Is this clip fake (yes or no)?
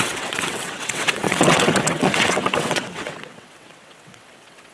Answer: yes